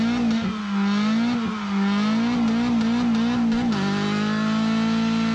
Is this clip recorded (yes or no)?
yes